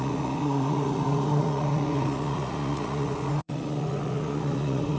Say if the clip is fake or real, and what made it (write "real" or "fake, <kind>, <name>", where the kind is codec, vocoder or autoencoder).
fake, vocoder, Vocos